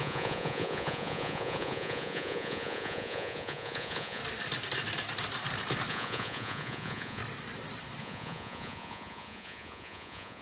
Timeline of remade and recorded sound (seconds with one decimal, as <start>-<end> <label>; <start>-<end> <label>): 0.0-4.2 remade; 4.2-5.9 recorded; 5.9-7.2 remade; 7.2-8.0 recorded; 8.0-10.4 remade